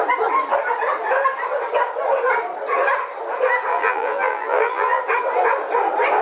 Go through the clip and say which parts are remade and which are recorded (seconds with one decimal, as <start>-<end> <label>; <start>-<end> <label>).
0.0-3.7 recorded; 3.7-5.0 remade; 5.0-6.2 recorded